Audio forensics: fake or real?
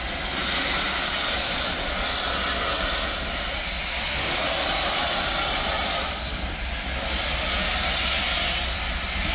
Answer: real